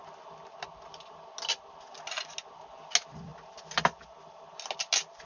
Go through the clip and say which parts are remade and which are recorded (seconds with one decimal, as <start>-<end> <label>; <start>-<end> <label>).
0.0-5.3 recorded